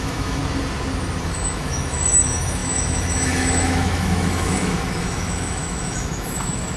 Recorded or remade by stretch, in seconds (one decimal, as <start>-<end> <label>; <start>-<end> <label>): 0.0-0.4 remade; 0.4-1.2 recorded; 1.2-6.8 remade